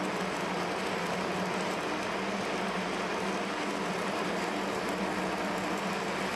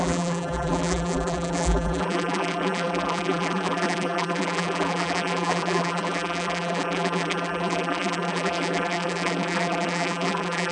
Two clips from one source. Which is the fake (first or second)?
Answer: second